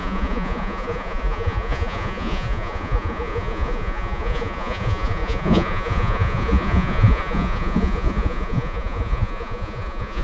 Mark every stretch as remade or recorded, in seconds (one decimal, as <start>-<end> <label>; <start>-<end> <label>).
0.0-10.2 remade